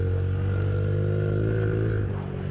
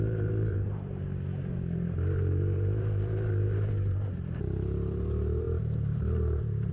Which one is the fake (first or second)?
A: second